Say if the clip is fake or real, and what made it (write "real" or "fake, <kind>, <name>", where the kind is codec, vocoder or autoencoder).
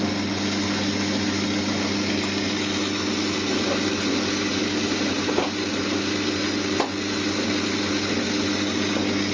real